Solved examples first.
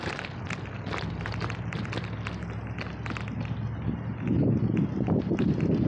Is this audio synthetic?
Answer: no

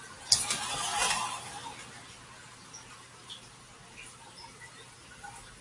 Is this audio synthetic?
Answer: no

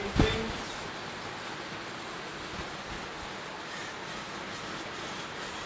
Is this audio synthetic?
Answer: no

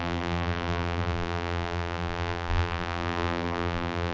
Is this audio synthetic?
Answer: yes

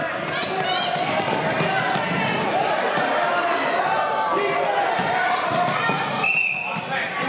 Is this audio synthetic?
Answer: no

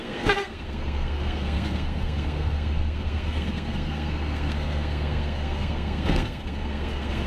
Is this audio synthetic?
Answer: yes